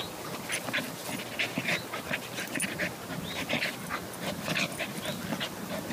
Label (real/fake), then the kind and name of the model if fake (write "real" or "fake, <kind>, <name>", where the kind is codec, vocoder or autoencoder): real